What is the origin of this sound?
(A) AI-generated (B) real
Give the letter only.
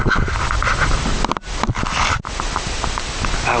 B